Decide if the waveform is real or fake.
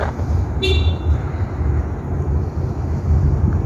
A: real